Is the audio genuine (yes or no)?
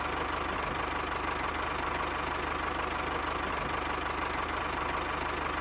yes